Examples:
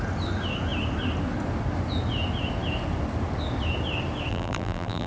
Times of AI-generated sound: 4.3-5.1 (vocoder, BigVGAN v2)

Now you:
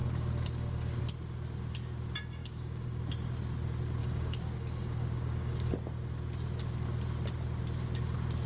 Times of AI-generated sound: 0.0-1.0 (codec, DAC); 2.4-3.0; 4.0-5.7

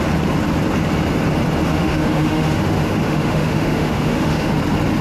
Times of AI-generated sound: 1.7-4.5 (autoencoder, DAC-VAE)

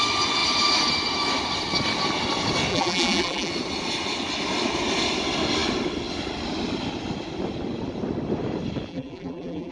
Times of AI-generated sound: 2.7-3.5 (vocoder, BigVGAN v2); 8.9-9.7

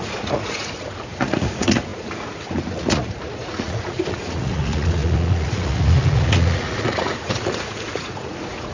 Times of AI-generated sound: 0.0-8.7 (vocoder, Vocos)

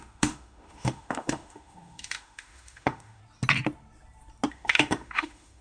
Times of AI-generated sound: 0.0-3.2 (autoencoder, DAC-VAE); 4.5-5.6